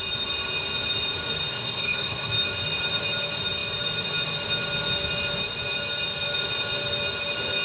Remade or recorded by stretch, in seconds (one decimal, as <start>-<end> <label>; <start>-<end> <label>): 0.0-1.5 recorded; 1.5-2.3 remade; 2.3-7.6 recorded